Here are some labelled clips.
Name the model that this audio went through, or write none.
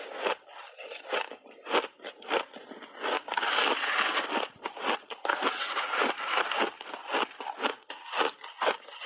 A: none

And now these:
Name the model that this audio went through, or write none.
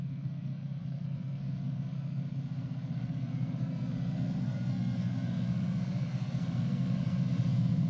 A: codec, SNAC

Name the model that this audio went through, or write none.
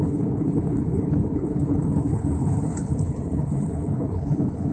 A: codec, HILCodec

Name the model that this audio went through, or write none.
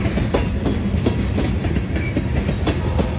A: none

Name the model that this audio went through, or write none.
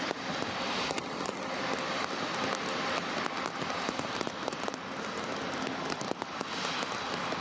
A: none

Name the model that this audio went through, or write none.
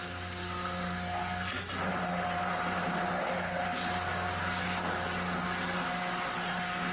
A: none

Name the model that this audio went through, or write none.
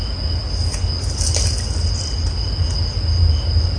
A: none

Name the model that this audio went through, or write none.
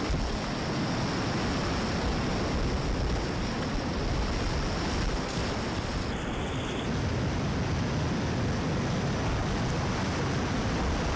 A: none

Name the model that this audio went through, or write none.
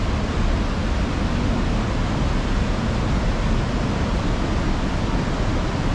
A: none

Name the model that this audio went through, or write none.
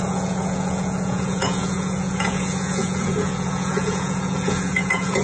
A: vocoder, Vocos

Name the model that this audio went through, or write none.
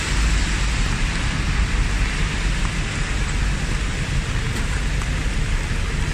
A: none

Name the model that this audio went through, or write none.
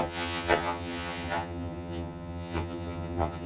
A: vocoder, HiFi-GAN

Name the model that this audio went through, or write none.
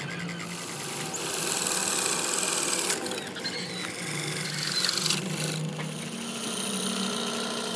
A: none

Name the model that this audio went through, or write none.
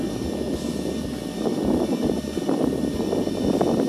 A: none